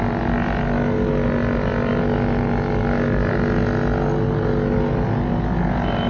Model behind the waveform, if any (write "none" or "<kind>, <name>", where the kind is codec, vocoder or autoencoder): none